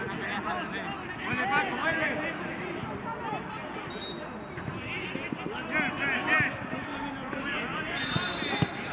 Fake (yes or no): no